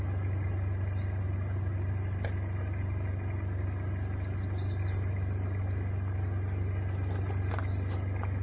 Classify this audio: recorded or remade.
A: recorded